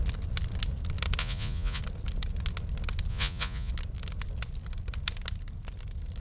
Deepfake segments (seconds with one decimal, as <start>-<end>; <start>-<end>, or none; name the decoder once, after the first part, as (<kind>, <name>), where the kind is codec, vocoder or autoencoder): 1.2-1.8 (vocoder, Vocos); 3.1-3.7